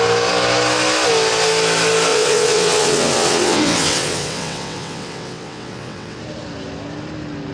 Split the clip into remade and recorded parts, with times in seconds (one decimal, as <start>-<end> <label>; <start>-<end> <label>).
0.0-2.1 recorded; 2.1-6.2 remade; 6.2-7.5 recorded